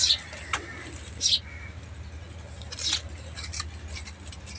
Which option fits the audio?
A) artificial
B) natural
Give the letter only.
B